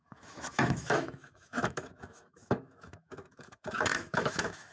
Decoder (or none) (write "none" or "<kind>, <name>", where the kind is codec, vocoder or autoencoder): autoencoder, DAC-VAE